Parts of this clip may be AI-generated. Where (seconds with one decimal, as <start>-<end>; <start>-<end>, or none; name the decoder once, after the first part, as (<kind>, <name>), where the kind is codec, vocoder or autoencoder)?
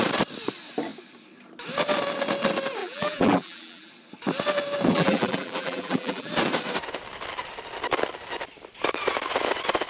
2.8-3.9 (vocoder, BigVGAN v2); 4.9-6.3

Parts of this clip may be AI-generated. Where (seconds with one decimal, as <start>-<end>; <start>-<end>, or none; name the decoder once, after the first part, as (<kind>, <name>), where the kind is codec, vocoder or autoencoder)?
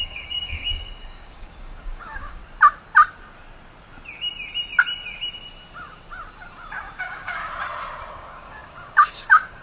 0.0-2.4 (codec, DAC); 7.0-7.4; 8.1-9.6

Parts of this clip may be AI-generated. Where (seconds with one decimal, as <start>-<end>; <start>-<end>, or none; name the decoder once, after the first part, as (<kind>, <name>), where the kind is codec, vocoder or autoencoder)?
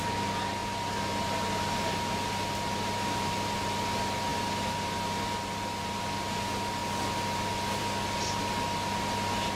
none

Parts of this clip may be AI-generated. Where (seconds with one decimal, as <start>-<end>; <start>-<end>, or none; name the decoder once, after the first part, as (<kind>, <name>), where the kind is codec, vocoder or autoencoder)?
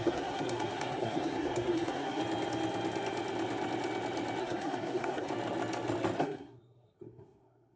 0.0-2.2 (codec, SNAC); 4.4-5.3; 6.2-7.8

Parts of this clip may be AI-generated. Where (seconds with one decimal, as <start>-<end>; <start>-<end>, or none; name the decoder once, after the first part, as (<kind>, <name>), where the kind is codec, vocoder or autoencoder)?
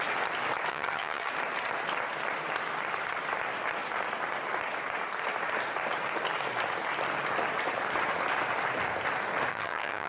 0.7-1.3 (vocoder, HiFi-GAN); 9.5-10.1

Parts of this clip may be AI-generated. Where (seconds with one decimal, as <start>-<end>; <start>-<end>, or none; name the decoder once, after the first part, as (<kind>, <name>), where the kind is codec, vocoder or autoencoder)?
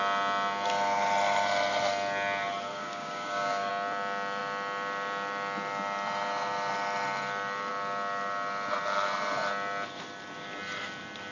2.7-3.7 (codec, DAC)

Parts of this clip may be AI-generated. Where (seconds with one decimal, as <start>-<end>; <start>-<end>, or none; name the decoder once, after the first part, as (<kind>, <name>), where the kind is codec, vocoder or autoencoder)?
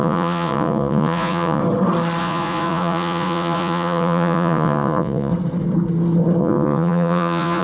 0.0-1.6 (vocoder, Vocos); 2.2-5.3; 6.4-7.6